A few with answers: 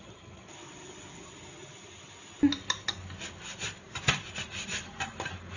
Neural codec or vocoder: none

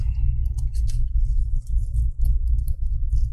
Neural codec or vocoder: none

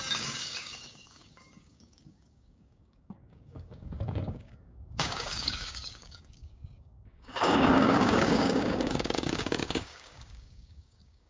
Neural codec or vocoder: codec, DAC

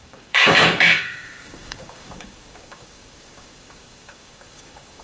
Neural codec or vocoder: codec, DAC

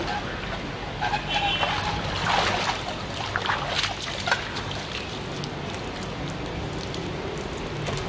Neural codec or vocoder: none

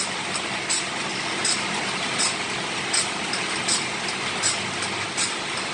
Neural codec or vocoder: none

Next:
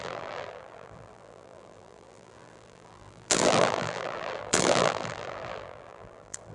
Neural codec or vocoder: vocoder, BigVGAN v2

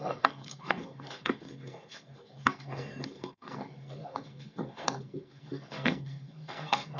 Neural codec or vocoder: codec, SNAC